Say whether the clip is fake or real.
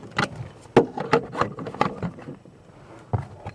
real